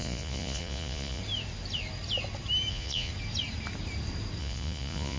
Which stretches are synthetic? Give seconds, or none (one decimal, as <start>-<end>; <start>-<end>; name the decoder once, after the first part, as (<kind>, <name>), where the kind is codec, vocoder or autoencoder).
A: 0.0-1.2 (vocoder, Vocos); 2.7-3.1; 4.4-5.2